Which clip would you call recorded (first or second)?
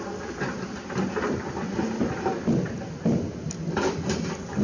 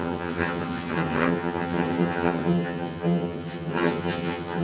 first